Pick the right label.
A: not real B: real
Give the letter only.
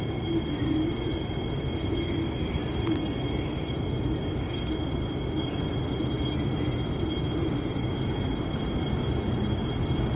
B